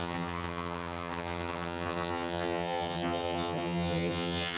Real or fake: fake